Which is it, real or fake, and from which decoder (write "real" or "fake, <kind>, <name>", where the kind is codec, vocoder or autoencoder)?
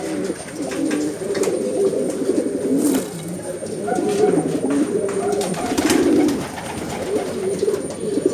real